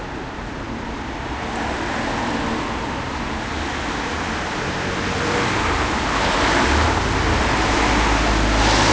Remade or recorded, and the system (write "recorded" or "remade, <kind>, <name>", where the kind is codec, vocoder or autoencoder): recorded